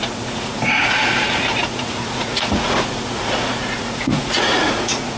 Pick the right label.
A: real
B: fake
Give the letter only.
B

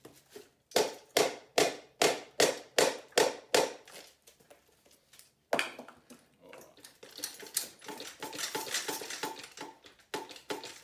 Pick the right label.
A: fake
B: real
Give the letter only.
B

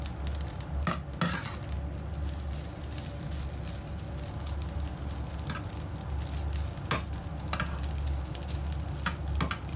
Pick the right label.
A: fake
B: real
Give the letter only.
B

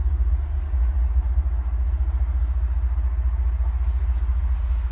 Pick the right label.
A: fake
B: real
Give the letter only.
B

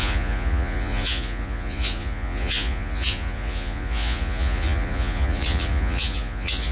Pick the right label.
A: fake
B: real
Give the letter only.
A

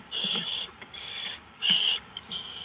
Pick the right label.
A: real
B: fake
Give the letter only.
B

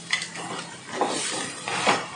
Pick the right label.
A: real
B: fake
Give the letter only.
A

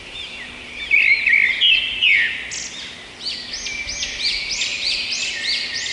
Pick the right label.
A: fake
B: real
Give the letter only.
B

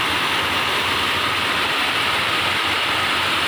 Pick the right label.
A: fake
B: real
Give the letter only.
B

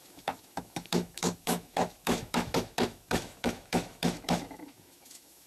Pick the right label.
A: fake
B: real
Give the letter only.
A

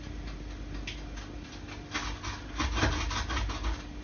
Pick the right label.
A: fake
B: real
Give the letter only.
B